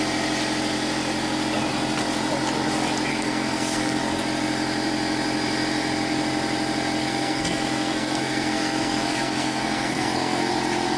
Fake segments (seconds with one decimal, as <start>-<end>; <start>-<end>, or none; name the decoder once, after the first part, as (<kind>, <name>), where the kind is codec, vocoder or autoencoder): 3.1-4.2 (codec, SNAC); 7.0-10.5